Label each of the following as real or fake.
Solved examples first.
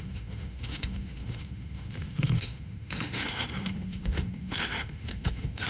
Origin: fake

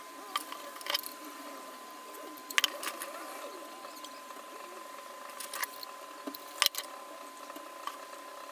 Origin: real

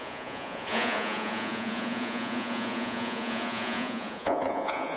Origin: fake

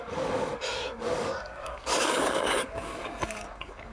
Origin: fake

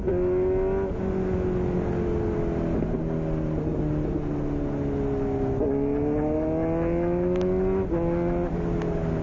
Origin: real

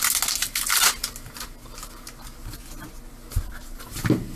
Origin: real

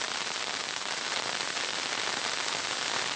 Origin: real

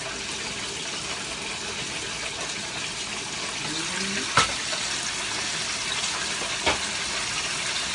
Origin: real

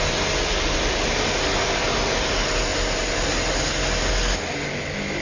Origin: real